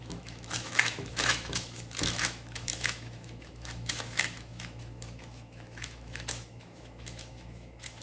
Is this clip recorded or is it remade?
remade